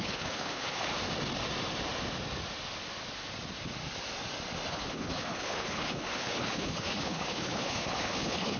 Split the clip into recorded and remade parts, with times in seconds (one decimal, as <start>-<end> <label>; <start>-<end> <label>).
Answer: 0.0-0.9 remade; 0.9-4.7 recorded; 4.7-8.6 remade